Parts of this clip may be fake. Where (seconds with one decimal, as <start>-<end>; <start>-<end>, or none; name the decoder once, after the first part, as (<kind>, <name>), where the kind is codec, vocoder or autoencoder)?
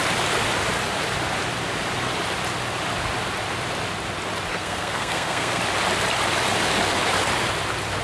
4.5-5.6 (codec, SNAC)